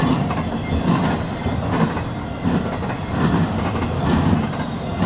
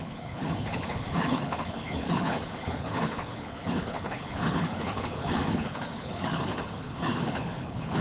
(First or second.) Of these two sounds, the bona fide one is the first